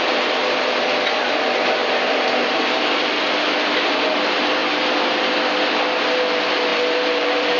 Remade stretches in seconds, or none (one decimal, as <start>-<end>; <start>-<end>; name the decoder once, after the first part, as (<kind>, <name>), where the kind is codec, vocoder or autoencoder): 1.8-2.6 (vocoder, BigVGAN v2); 6.7-7.6